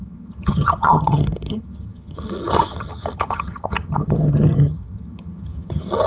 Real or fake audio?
fake